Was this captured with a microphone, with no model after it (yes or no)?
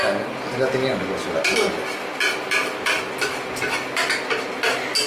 yes